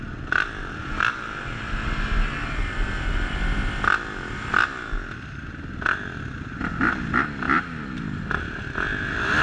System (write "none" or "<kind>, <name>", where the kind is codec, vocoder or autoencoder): none